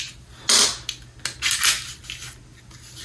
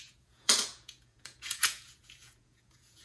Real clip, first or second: first